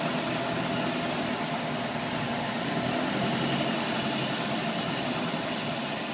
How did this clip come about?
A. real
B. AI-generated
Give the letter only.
A